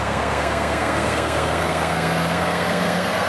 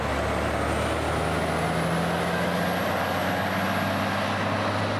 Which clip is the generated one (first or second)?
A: first